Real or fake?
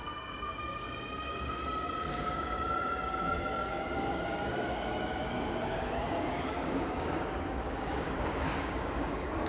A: fake